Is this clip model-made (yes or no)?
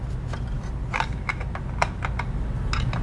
no